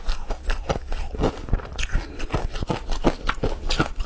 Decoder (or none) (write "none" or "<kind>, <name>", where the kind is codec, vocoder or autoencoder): none